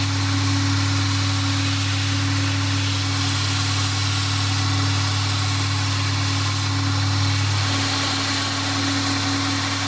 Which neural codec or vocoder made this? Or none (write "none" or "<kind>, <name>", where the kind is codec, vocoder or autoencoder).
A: none